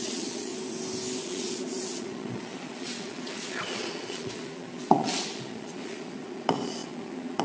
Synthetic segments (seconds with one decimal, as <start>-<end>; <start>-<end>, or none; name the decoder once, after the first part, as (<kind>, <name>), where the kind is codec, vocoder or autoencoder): 0.0-0.5 (vocoder, Vocos); 1.2-7.4